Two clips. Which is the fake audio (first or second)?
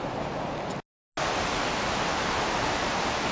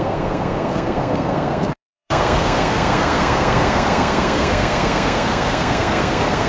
second